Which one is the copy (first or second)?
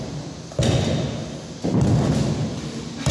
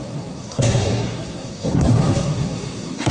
second